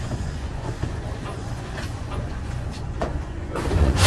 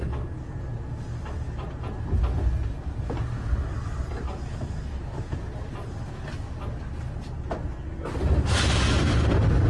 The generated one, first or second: first